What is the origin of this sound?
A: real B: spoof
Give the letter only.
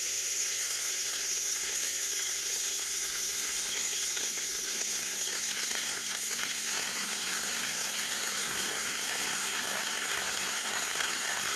B